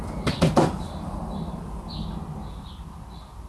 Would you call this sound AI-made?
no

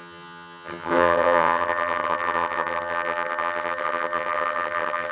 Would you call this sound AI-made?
yes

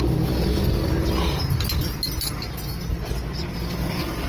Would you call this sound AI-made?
no